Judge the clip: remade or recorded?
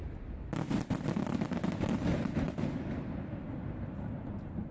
recorded